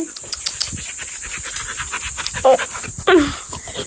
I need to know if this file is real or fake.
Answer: real